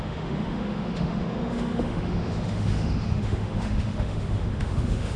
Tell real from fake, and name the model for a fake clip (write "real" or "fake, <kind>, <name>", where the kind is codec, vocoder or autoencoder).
fake, autoencoder, DAC-VAE